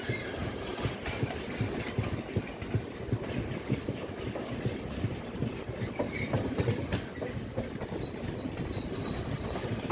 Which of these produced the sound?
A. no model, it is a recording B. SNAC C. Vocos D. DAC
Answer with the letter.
A